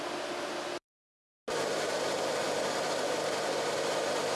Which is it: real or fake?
real